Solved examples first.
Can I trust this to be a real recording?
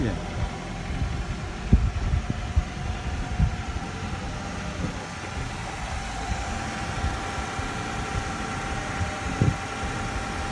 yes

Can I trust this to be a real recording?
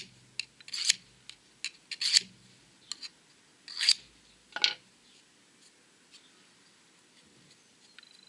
yes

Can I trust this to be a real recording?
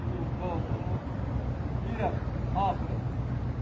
yes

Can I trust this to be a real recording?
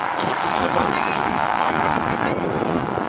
no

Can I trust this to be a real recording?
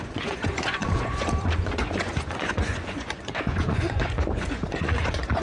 no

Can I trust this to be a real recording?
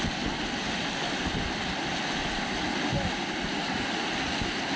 yes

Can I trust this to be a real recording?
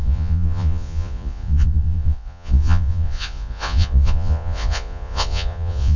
no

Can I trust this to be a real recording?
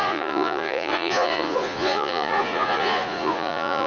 no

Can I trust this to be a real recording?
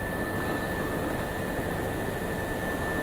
yes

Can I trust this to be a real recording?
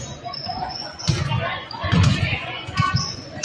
no